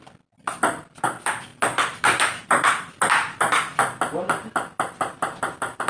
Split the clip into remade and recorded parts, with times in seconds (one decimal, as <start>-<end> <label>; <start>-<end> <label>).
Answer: 0.0-5.9 recorded